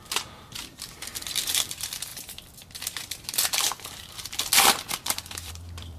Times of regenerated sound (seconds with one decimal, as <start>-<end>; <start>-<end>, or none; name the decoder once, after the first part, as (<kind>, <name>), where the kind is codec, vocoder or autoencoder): 0.0-6.0 (vocoder, BigVGAN v2)